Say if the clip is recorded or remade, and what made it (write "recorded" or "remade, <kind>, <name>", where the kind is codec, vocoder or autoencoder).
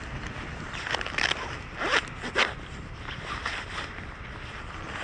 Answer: recorded